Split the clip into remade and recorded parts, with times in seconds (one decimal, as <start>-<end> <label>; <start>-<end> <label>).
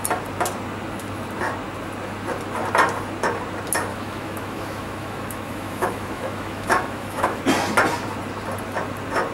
0.0-3.9 recorded; 3.9-7.4 remade; 7.4-9.3 recorded